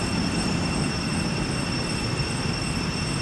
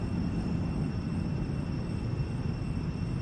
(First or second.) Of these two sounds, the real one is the second